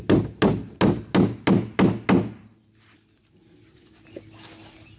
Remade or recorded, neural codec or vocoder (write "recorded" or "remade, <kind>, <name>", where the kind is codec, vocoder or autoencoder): recorded